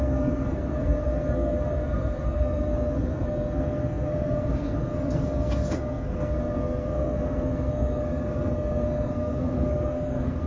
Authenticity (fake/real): fake